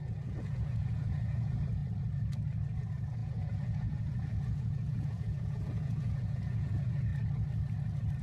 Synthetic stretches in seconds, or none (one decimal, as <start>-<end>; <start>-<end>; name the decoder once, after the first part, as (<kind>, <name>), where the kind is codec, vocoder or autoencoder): 0.0-1.8 (vocoder, Vocos); 2.8-7.1